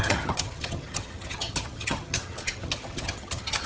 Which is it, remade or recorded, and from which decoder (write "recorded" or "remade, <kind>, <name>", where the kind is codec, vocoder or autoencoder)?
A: remade, vocoder, HiFi-GAN